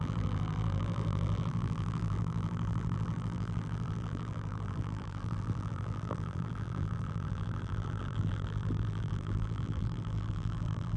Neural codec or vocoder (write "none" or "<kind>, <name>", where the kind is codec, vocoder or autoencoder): vocoder, BigVGAN v2